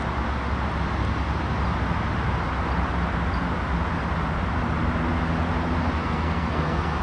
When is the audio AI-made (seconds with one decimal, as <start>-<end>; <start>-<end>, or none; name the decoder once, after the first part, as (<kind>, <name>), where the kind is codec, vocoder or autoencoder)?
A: 6.0-7.0 (codec, SNAC)